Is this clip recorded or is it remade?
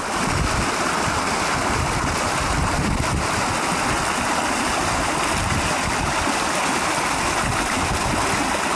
recorded